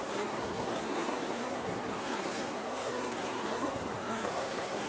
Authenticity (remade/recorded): remade